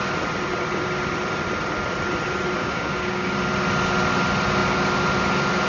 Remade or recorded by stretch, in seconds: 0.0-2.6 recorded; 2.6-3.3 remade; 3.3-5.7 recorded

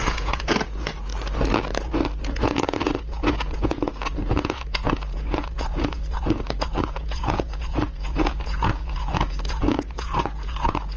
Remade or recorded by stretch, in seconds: 0.0-1.1 remade; 1.1-2.2 recorded; 2.2-11.0 remade

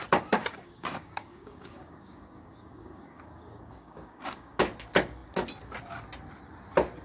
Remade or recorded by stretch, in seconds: 0.0-0.4 recorded; 0.4-4.6 remade; 4.6-7.0 recorded

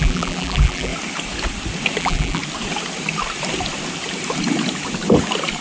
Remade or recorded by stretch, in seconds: 0.0-0.9 remade; 0.9-2.0 recorded; 2.0-2.4 remade; 2.4-5.6 recorded

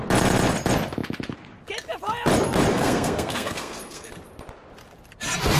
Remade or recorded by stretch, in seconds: 0.0-2.7 recorded; 2.7-4.1 remade; 4.1-5.6 recorded

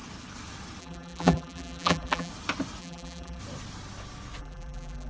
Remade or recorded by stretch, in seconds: 0.0-0.8 recorded; 0.8-2.3 remade; 2.3-2.8 recorded; 2.8-3.4 remade; 3.4-4.4 recorded; 4.4-5.1 remade

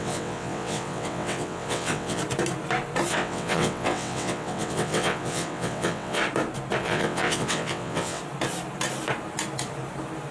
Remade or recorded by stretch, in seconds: 0.0-2.2 remade; 2.2-3.1 recorded; 3.1-6.2 remade; 6.2-6.8 recorded; 6.8-8.2 remade; 8.2-10.3 recorded